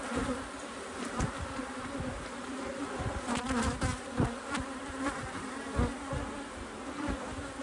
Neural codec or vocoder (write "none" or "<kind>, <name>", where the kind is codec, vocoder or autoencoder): none